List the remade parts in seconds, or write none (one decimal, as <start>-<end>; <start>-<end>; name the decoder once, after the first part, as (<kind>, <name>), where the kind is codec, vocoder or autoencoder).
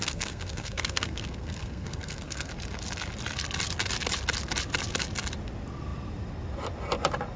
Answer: 0.0-2.5 (codec, SNAC)